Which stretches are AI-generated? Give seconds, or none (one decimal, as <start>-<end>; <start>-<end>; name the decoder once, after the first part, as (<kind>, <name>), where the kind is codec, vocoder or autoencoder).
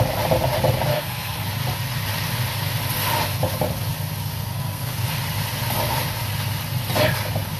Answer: 0.9-1.5 (codec, SNAC); 4.2-5.1